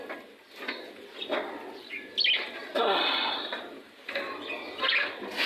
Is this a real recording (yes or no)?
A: yes